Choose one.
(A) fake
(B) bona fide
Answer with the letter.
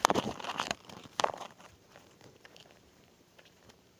A